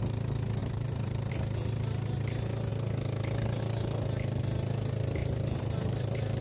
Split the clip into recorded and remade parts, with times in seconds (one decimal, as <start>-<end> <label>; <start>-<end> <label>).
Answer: 0.0-0.6 recorded; 0.6-1.3 remade; 1.3-5.2 recorded; 5.2-6.4 remade